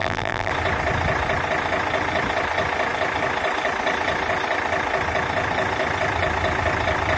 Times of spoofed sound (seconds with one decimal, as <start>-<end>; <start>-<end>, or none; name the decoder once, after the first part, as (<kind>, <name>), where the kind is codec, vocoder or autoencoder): 0.0-0.5 (vocoder, BigVGAN v2)